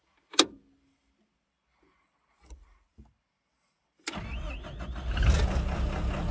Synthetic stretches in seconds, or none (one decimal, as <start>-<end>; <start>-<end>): none